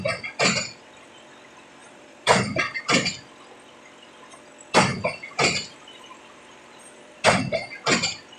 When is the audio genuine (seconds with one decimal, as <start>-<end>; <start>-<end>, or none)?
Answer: 0.0-1.8; 2.8-4.9; 7.4-8.4